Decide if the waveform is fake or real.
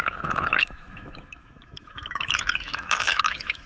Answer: fake